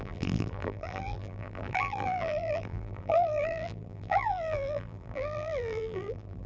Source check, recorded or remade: remade